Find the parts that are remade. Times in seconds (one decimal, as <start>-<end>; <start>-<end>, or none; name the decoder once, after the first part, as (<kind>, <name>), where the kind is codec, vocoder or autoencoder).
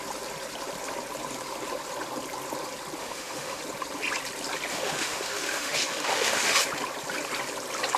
3.0-3.6 (autoencoder, DAC-VAE); 4.7-6.6